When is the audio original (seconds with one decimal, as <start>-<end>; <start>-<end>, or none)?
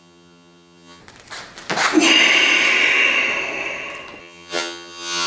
1.0-4.2